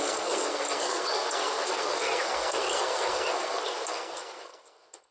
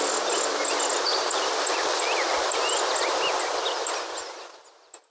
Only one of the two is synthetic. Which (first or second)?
first